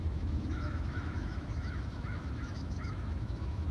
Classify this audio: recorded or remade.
remade